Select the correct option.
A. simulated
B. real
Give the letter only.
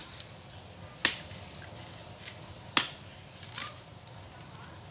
B